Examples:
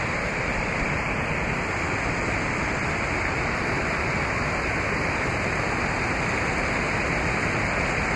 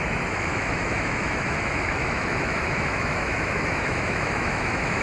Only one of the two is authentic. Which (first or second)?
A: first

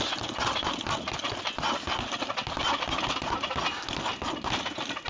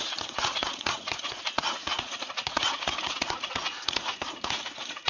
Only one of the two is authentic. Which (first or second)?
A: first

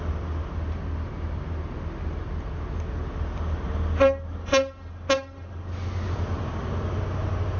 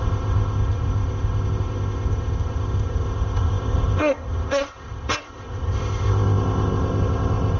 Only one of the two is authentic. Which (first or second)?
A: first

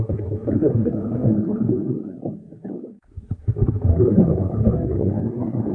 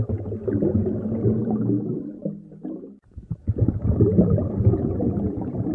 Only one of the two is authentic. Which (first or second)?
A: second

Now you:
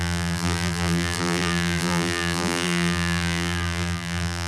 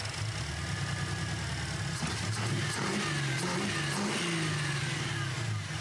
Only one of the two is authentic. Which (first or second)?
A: second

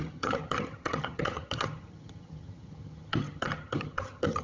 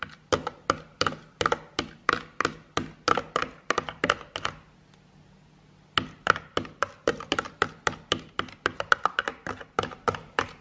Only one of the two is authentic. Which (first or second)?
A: second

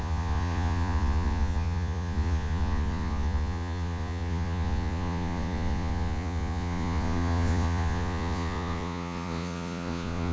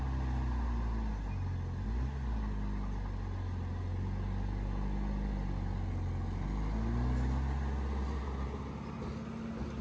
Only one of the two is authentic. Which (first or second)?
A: second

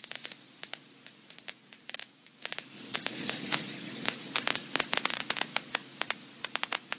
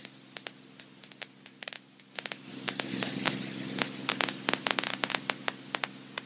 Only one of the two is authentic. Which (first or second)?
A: second